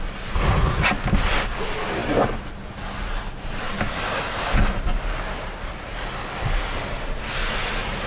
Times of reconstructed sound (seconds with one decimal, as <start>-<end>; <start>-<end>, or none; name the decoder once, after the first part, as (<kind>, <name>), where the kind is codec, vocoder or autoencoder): none